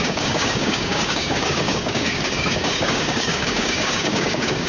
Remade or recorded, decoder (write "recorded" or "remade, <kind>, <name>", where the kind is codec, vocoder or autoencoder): remade, codec, DAC